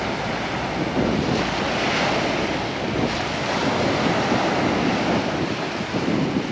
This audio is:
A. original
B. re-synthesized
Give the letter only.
A